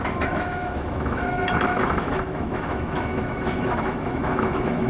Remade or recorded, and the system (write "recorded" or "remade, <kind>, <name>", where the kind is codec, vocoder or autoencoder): remade, autoencoder, DAC-VAE